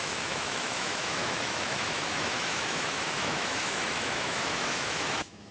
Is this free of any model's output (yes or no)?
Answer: no